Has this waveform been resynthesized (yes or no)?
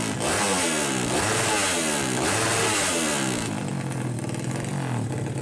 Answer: no